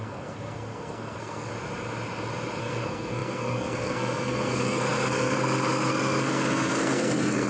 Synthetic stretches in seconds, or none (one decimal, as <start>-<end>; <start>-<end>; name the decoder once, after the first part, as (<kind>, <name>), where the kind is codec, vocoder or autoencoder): 0.0-1.5 (codec, SNAC); 2.6-7.5